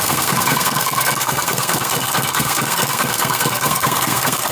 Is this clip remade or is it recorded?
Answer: remade